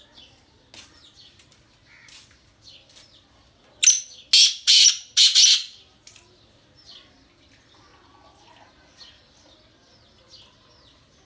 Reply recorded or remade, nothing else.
recorded